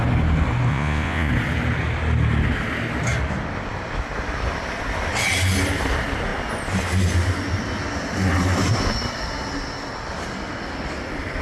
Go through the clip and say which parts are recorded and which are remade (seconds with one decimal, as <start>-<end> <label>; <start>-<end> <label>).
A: 0.0-0.7 recorded; 0.7-1.3 remade; 1.3-11.4 recorded